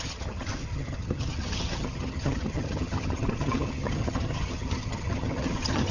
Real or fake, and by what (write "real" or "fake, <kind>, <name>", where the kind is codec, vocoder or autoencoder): fake, vocoder, HiFi-GAN